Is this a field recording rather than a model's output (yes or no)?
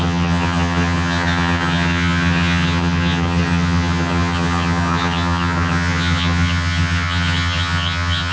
no